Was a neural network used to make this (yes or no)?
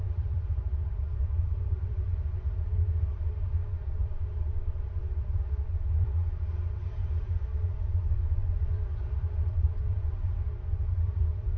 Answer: yes